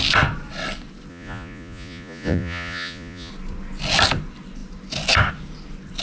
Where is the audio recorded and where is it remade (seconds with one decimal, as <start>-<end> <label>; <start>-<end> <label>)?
0.0-1.1 recorded; 1.1-3.3 remade; 3.3-6.0 recorded